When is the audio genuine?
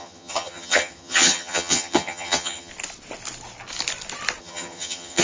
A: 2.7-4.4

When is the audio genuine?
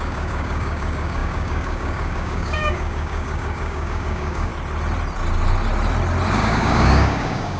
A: 4.5-6.3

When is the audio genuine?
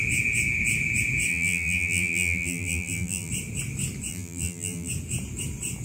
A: 0.0-1.3; 3.3-4.1; 4.9-5.8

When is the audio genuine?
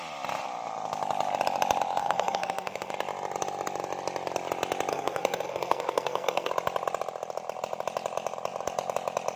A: 0.0-2.0; 2.9-4.9; 6.5-9.4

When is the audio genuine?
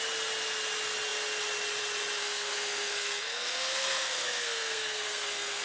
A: 0.0-2.2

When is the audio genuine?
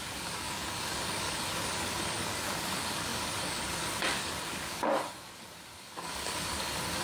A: none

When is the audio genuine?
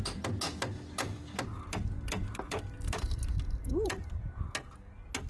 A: 0.0-1.5; 4.4-5.3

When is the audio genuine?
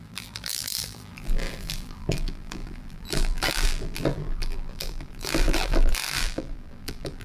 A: none